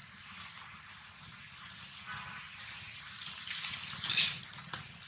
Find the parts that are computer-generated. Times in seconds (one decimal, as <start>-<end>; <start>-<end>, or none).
none